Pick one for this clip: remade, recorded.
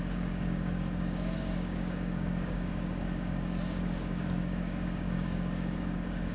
remade